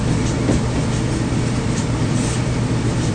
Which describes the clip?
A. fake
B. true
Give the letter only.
A